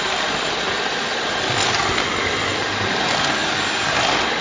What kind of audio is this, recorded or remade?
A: recorded